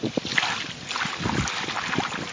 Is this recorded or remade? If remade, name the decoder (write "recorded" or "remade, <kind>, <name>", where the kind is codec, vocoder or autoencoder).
recorded